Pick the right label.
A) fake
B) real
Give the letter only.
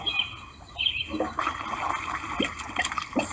B